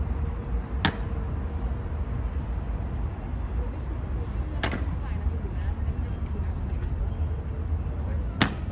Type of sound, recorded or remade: recorded